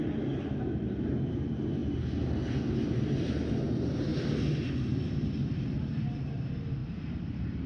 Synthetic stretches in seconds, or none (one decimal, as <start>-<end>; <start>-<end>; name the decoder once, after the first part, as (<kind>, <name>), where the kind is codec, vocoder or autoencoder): 6.8-7.7 (vocoder, BigVGAN v2)

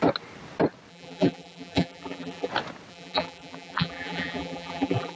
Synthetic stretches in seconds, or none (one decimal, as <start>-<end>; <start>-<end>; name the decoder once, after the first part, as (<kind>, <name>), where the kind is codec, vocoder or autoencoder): 0.9-2.5 (vocoder, BigVGAN v2); 2.9-5.2

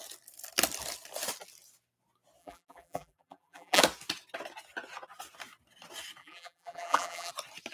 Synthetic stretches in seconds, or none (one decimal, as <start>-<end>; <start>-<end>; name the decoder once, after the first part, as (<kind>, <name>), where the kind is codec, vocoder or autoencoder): 2.4-3.8 (vocoder, BigVGAN v2); 6.2-7.3

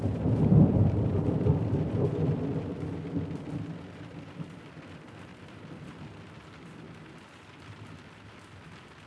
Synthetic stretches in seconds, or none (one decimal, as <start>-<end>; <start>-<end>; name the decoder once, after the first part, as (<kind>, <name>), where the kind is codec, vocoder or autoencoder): 5.3-7.1 (vocoder, BigVGAN v2)

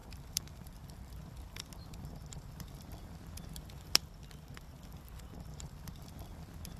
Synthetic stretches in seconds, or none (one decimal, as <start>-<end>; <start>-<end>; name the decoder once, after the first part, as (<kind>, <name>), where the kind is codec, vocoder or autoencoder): 0.0-3.6 (vocoder, BigVGAN v2); 5.5-6.8

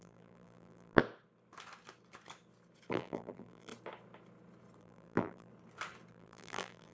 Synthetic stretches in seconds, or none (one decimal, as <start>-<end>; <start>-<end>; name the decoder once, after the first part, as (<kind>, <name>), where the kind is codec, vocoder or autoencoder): 0.0-1.0 (vocoder, BigVGAN v2); 2.9-3.7; 4.8-5.5; 6.1-6.9

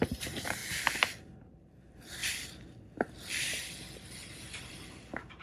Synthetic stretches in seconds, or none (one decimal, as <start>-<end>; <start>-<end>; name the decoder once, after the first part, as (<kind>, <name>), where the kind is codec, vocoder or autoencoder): 0.0-0.6 (vocoder, BigVGAN v2); 1.2-2.2; 4.7-5.4

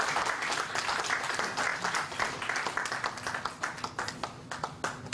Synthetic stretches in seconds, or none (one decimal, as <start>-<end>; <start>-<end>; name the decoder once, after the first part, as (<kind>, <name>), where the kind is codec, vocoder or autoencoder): none